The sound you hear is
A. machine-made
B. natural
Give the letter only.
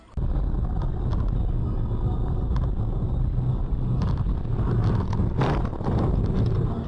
B